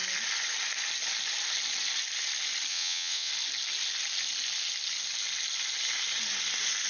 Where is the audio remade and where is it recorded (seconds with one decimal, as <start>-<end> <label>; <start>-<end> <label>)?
0.0-2.7 recorded; 2.7-3.3 remade; 3.3-6.9 recorded